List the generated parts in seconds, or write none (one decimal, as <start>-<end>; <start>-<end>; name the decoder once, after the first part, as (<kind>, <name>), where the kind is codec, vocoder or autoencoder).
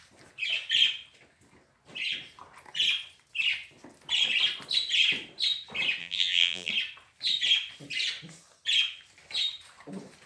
6.0-6.7 (vocoder, BigVGAN v2)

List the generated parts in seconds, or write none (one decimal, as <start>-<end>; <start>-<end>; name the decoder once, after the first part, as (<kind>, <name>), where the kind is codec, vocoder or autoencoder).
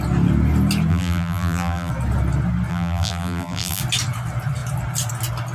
0.9-1.9 (vocoder, BigVGAN v2); 2.7-3.8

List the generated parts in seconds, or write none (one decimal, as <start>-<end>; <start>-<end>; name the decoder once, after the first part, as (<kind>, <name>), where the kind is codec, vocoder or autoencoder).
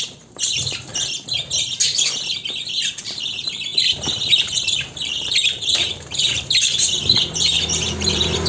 0.0-0.9 (vocoder, BigVGAN v2); 2.9-3.7; 4.4-8.5